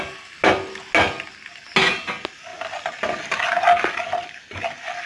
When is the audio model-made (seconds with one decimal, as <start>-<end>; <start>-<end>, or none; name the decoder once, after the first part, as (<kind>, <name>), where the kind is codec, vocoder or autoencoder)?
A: none